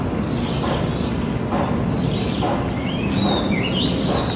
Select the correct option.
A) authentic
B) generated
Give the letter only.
A